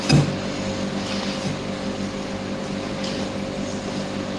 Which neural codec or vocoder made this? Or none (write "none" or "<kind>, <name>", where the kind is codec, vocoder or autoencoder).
none